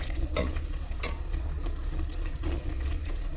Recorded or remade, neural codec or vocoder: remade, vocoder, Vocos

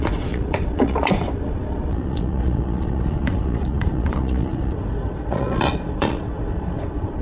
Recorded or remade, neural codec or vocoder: remade, vocoder, Vocos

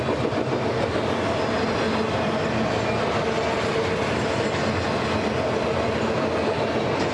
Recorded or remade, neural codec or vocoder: recorded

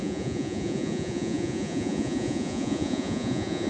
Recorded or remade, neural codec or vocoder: remade, vocoder, Vocos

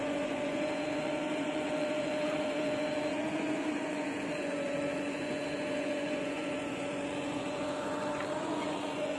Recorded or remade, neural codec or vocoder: remade, vocoder, Vocos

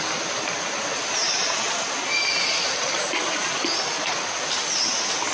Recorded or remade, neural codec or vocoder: recorded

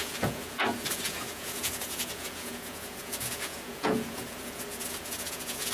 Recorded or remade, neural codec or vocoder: remade, vocoder, Vocos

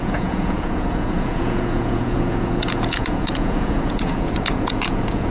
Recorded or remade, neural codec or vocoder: remade, vocoder, Vocos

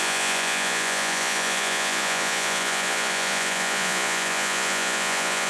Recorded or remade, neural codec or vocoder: remade, vocoder, Vocos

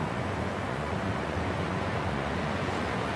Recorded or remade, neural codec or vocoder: remade, vocoder, Vocos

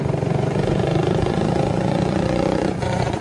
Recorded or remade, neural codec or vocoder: remade, vocoder, Vocos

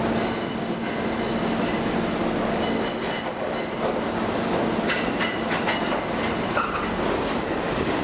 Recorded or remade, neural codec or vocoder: recorded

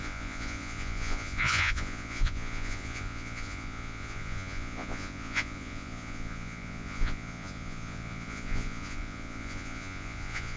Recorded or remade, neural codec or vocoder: remade, vocoder, Vocos